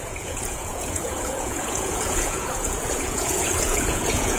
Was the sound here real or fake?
fake